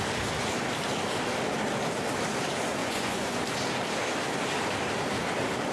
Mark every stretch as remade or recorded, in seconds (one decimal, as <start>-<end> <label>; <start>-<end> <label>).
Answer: 0.0-2.8 recorded; 2.8-3.4 remade; 3.4-5.7 recorded